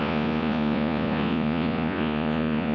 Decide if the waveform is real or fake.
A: fake